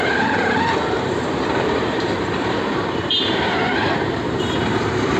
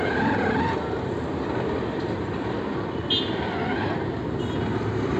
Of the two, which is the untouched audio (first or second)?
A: second